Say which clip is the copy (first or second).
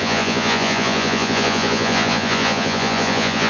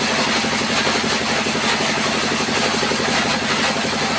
first